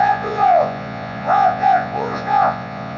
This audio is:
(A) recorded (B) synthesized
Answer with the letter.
B